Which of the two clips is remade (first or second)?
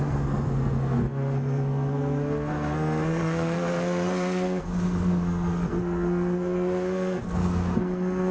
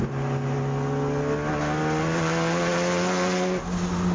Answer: first